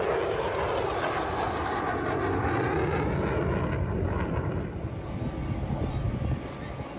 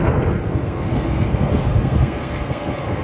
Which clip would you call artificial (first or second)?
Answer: second